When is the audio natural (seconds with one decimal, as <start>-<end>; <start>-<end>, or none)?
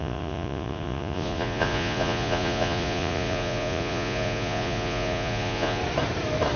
5.8-6.6